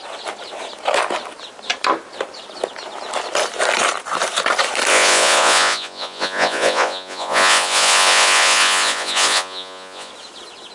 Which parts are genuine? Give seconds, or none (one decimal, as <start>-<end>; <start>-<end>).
0.0-4.9; 10.1-10.7